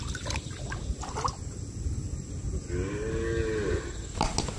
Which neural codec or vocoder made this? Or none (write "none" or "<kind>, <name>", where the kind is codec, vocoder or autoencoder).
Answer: none